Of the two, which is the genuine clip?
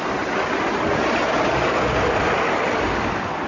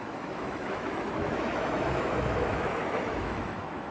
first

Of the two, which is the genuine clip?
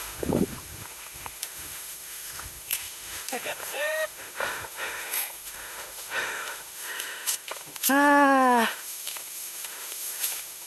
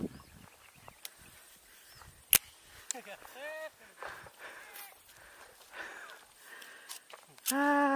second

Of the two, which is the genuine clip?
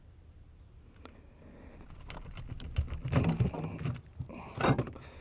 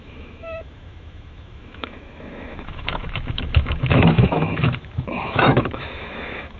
first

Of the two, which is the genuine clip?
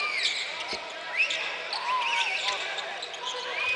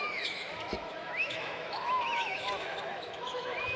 first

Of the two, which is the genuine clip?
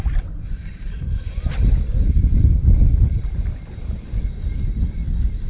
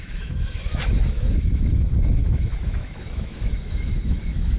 first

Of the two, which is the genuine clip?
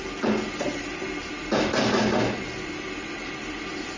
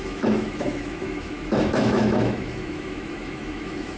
first